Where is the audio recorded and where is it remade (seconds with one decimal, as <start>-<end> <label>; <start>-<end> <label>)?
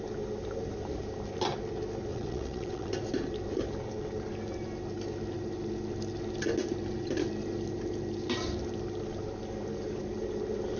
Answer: 0.0-2.1 recorded; 2.1-2.9 remade; 2.9-10.8 recorded